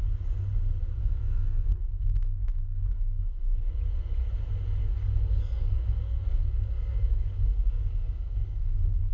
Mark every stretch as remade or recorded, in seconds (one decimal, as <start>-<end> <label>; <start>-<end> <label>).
0.0-1.0 recorded; 1.0-3.4 remade; 3.4-4.8 recorded; 4.8-9.1 remade